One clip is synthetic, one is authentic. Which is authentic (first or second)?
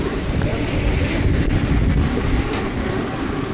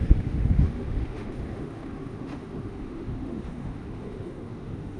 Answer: first